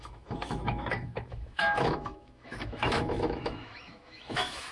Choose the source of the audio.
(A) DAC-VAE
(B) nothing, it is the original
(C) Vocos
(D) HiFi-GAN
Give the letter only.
A